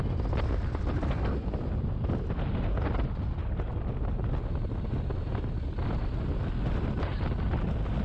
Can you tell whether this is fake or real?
real